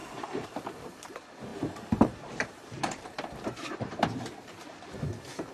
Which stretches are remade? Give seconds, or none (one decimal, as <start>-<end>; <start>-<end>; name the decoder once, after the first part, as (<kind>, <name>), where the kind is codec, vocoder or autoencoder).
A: 0.0-1.1 (vocoder, BigVGAN v2); 1.5-4.8